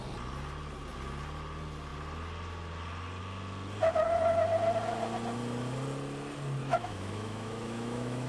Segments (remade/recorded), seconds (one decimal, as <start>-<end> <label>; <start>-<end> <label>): 0.0-6.6 recorded; 6.6-8.3 remade